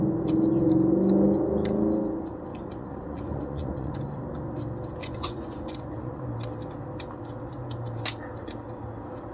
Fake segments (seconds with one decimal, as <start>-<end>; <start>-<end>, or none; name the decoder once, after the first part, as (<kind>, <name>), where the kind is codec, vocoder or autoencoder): 2.5-4.2 (vocoder, Vocos); 5.0-6.3